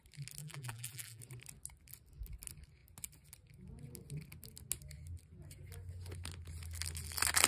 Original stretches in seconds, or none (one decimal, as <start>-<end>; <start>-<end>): 0.0-0.4; 1.2-7.5